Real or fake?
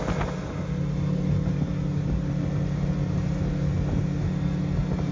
real